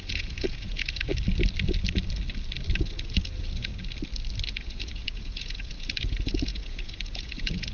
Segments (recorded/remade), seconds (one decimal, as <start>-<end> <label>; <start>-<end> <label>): 0.0-1.1 remade; 1.1-2.8 recorded; 2.8-3.7 remade; 3.7-4.5 recorded; 4.5-7.7 remade